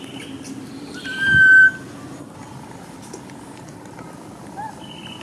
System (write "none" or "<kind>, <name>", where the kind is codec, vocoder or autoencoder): none